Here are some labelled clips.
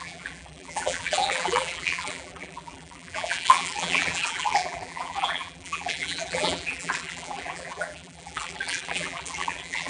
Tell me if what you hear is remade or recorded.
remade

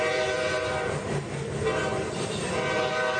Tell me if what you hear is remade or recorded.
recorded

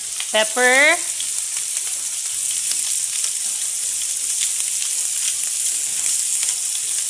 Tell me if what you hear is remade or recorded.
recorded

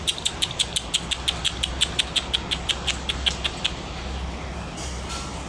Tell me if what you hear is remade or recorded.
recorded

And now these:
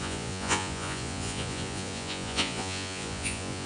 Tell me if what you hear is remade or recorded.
remade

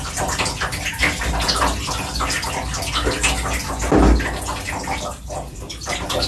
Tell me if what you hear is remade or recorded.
recorded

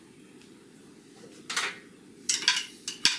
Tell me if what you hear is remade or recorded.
recorded